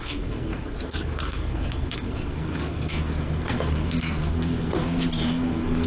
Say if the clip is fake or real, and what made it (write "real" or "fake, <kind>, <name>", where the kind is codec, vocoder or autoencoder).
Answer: fake, codec, SNAC